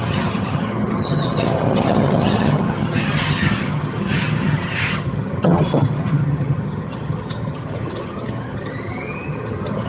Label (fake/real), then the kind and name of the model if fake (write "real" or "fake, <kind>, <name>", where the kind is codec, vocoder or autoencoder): fake, vocoder, HiFi-GAN